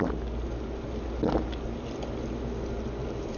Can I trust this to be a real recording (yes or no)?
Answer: yes